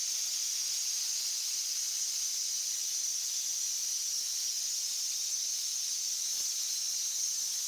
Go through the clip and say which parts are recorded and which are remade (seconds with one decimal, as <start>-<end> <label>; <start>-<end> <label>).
0.0-7.7 recorded